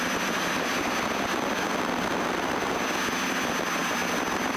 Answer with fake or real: real